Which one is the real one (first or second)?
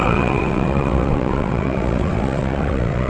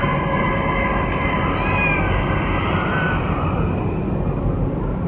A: second